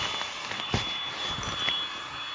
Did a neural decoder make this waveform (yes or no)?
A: no